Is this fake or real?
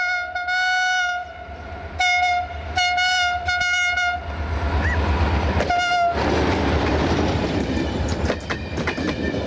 real